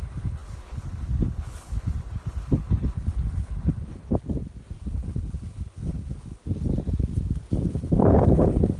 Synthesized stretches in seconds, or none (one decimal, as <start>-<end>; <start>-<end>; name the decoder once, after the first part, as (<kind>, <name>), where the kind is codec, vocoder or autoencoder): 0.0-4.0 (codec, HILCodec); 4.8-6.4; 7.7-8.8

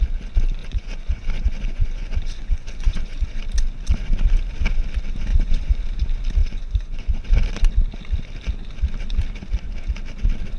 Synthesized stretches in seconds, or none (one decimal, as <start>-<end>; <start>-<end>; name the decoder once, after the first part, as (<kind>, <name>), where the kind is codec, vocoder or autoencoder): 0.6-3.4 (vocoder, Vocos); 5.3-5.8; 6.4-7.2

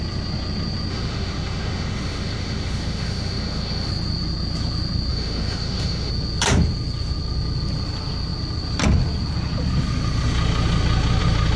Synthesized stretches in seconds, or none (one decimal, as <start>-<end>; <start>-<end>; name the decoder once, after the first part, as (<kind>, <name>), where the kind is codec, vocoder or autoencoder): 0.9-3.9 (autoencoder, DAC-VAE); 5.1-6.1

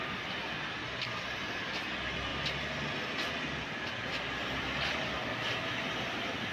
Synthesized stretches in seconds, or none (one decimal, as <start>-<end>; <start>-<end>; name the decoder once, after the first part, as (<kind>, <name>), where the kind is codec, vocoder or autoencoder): none

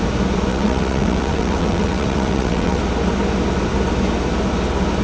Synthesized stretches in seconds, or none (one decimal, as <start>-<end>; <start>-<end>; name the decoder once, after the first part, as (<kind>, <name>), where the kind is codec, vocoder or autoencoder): 0.5-2.8 (vocoder, WaveNeXt)

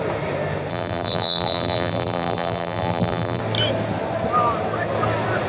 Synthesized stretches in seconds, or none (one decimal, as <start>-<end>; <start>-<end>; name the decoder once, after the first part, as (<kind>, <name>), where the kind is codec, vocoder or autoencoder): 0.7-3.4 (vocoder, BigVGAN v2)

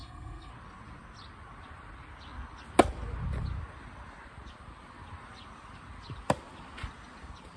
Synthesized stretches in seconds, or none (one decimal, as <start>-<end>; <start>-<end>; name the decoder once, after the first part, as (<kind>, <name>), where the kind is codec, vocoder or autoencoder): 0.0-0.5 (codec, SNAC)

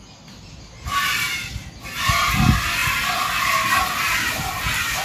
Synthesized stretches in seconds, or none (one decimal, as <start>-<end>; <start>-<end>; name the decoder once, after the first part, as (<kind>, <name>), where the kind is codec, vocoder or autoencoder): none